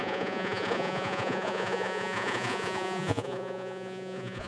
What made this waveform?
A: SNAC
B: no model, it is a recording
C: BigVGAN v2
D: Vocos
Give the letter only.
D